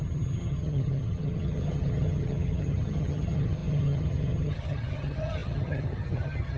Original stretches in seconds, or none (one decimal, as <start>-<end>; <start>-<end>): none